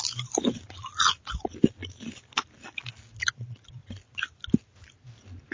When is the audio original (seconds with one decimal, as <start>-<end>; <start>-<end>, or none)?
0.0-5.5